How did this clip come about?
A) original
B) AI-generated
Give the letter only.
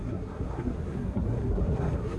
B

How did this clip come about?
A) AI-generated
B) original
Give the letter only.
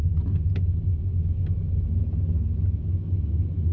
B